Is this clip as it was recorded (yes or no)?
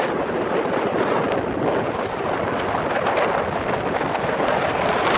yes